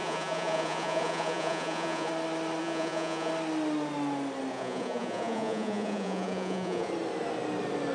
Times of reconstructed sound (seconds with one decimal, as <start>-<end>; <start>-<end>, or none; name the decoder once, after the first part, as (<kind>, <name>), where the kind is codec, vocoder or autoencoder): 0.0-2.1 (vocoder, Vocos); 2.6-3.3; 4.5-6.9